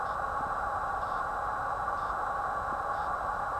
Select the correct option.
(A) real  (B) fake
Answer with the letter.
A